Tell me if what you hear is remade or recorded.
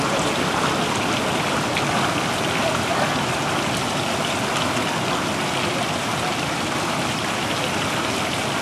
recorded